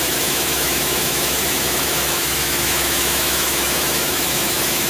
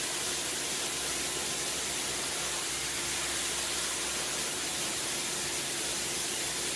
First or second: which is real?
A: second